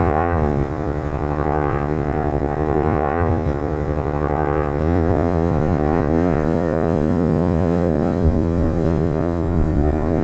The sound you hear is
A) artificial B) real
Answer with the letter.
A